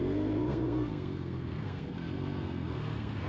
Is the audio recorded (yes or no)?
no